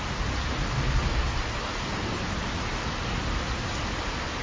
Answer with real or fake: real